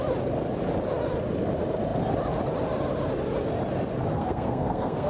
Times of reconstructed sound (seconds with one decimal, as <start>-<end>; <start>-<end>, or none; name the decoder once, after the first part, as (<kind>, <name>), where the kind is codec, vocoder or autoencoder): 4.1-5.1 (codec, SNAC)